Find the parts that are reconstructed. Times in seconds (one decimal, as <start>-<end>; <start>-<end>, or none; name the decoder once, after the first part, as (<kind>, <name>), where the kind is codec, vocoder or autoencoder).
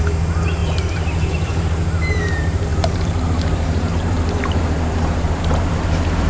0.0-6.3 (vocoder, BigVGAN v2)